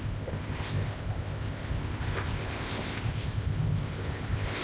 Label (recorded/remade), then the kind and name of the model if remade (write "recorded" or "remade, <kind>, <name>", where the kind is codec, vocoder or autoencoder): remade, codec, ZipCodec